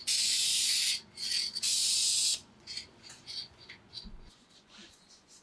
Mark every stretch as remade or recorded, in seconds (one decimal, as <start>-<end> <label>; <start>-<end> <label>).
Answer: 0.0-5.4 remade